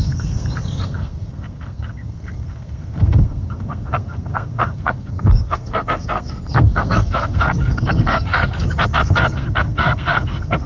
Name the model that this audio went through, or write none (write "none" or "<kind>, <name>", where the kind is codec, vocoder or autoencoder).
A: codec, SNAC